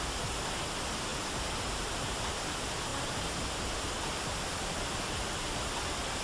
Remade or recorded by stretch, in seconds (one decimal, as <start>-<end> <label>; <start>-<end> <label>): 0.0-6.2 recorded